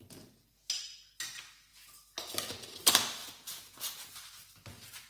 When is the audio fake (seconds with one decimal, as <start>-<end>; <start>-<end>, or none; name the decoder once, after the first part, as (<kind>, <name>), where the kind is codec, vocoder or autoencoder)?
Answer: 3.2-4.1 (vocoder, Vocos)